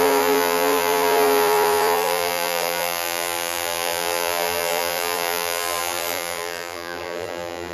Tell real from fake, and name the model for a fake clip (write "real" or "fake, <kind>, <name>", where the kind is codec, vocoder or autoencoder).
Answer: fake, vocoder, BigVGAN v2